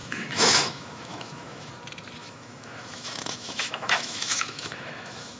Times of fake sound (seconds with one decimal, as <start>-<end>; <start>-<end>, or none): 0.0-1.7; 2.2-5.4

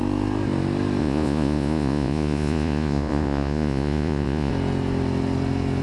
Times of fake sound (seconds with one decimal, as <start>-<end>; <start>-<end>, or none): 1.0-4.5

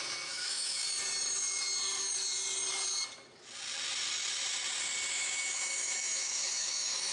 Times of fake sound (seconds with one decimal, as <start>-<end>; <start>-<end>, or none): 0.0-0.8; 5.1-7.1